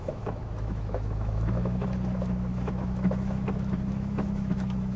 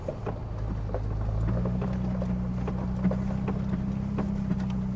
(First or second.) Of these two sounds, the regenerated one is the first